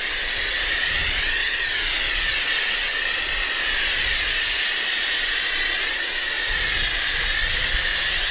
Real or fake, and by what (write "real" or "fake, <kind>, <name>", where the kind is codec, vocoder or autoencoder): real